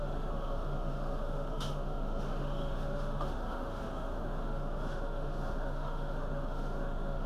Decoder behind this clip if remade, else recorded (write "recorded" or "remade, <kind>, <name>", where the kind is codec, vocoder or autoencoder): remade, autoencoder, DAC-VAE